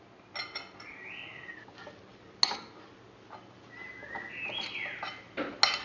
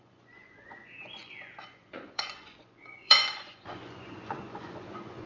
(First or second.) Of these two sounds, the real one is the first